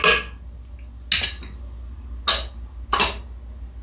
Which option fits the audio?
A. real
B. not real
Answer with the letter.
A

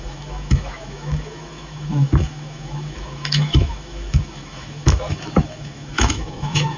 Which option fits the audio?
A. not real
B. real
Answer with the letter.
A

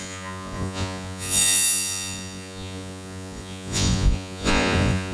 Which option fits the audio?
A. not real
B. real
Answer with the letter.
A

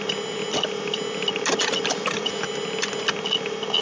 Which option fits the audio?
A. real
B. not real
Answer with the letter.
A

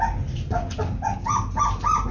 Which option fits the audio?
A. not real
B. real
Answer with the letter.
B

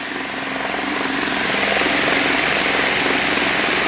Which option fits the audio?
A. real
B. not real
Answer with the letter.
A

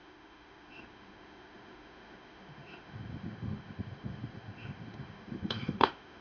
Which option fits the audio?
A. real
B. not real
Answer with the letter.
B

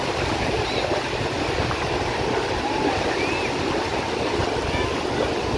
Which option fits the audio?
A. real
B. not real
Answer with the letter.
A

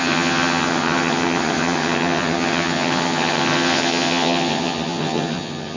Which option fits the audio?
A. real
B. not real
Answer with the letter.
B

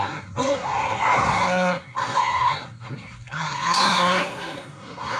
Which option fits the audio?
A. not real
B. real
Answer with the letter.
A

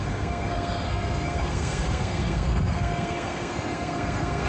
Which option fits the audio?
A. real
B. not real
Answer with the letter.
B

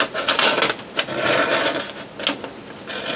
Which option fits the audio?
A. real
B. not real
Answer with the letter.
A